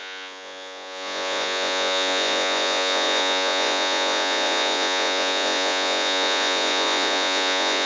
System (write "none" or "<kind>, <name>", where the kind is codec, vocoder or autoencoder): vocoder, Vocos